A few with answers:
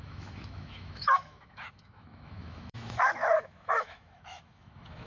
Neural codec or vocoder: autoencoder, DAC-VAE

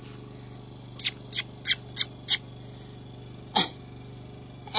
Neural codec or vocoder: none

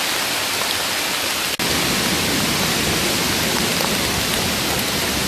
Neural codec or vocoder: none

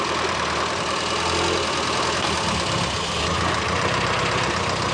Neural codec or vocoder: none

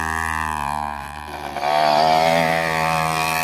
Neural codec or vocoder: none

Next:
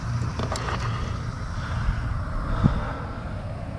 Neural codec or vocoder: none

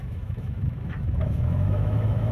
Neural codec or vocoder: autoencoder, DAC-VAE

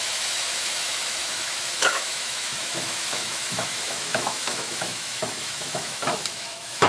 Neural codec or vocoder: autoencoder, DAC-VAE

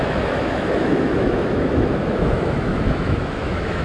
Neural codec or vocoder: autoencoder, DAC-VAE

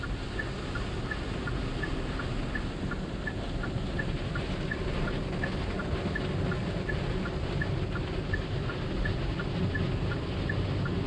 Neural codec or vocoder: none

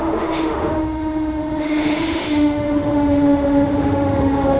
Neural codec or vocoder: autoencoder, DAC-VAE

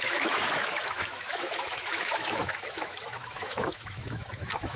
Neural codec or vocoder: autoencoder, DAC-VAE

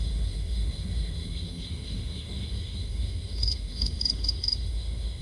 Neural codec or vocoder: autoencoder, DAC-VAE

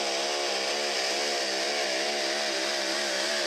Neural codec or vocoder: none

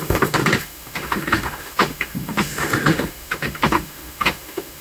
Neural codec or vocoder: autoencoder, DAC-VAE